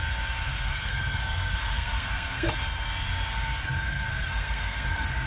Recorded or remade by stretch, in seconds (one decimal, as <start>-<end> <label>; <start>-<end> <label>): 0.0-0.7 recorded; 0.7-2.5 remade; 2.5-4.1 recorded; 4.1-5.3 remade